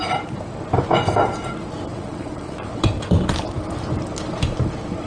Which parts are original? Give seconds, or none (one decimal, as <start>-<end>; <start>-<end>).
0.0-1.9; 2.8-5.1